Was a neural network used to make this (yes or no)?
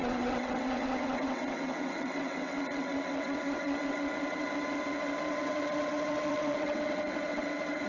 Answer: yes